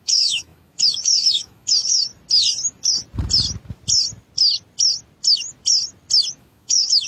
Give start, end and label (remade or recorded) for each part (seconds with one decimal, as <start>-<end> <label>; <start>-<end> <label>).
0.0-2.1 remade; 2.1-6.3 recorded; 6.3-7.1 remade